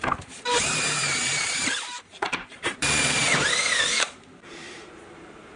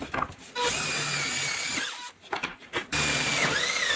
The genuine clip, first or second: second